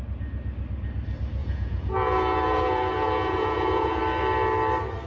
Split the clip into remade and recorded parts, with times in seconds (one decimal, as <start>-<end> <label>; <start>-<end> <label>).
0.0-1.4 recorded; 1.4-4.0 remade; 4.0-5.1 recorded

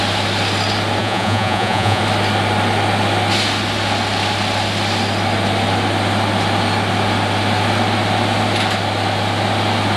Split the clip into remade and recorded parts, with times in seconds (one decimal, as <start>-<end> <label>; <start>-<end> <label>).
0.0-1.0 recorded; 1.0-2.0 remade; 2.0-10.0 recorded